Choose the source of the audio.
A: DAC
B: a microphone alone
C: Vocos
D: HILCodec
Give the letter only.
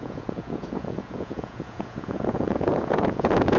C